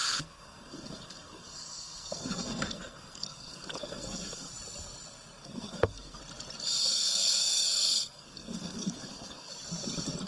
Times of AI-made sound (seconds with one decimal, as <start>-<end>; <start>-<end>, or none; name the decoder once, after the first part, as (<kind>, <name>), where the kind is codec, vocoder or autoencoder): 0.0-4.5 (codec, SNAC); 5.4-6.2; 6.8-9.5